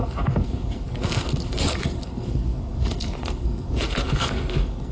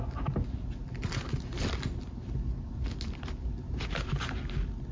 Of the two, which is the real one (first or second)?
second